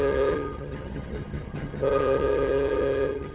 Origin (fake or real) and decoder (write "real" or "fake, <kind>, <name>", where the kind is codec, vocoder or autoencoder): fake, vocoder, HiFi-GAN